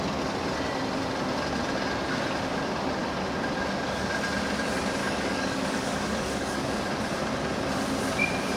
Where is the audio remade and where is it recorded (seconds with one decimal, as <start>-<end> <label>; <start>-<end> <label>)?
0.0-5.0 recorded; 5.0-6.9 remade; 6.9-8.6 recorded